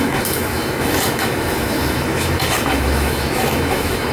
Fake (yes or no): yes